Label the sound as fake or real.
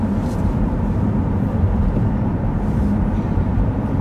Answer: fake